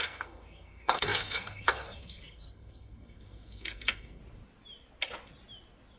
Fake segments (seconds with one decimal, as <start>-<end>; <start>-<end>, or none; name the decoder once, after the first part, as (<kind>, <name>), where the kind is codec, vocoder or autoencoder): 0.0-4.2 (codec, SNAC)